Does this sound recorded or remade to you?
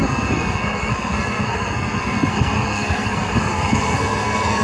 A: remade